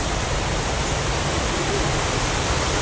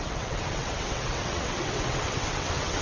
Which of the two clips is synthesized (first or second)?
second